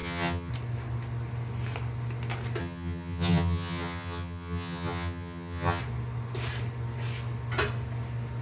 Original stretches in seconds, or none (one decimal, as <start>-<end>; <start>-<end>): 0.5-2.6; 5.8-8.4